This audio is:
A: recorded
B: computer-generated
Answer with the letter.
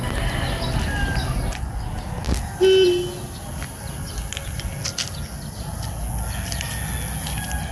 A